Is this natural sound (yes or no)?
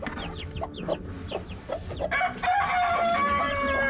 yes